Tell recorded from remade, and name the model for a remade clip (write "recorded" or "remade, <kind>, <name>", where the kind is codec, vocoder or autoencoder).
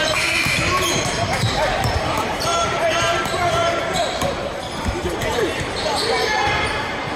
remade, vocoder, BigVGAN v2